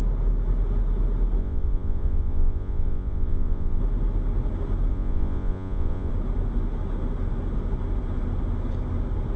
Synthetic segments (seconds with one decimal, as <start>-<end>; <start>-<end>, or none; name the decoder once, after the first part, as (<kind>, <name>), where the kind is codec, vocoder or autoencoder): 1.4-3.8 (vocoder, Vocos); 4.9-6.1